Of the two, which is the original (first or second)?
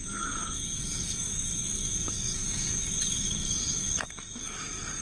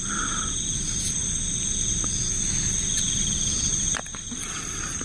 second